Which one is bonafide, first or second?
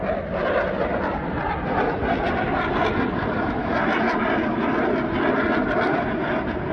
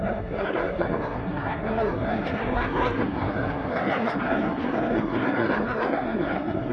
first